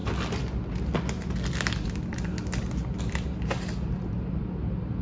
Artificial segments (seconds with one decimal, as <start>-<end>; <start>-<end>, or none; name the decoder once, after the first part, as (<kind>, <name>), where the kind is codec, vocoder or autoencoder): none